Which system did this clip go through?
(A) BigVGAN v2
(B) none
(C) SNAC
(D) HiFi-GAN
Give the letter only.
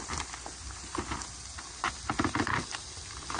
A